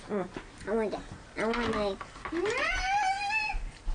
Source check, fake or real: real